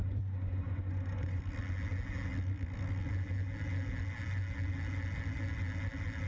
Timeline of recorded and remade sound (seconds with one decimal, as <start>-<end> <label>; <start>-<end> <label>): 0.0-1.4 remade; 1.4-6.3 recorded